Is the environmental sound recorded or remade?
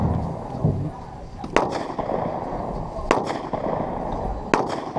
recorded